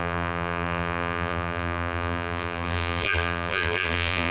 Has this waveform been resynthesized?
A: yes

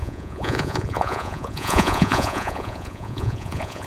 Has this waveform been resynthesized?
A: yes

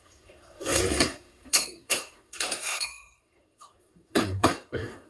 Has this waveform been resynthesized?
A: yes